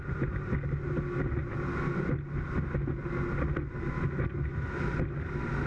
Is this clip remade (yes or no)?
no